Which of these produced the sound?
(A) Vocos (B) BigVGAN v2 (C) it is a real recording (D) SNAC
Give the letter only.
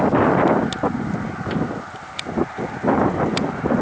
C